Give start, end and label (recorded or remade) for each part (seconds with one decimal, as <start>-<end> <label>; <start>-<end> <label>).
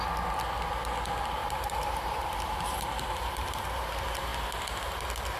0.0-1.4 recorded; 1.4-3.9 remade; 3.9-5.4 recorded